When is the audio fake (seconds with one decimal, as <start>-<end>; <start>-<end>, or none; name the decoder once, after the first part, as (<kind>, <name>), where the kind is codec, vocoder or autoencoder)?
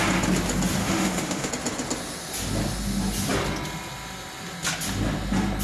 0.8-1.5 (autoencoder, DAC-VAE)